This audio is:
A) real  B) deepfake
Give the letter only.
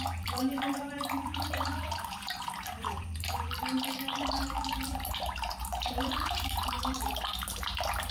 B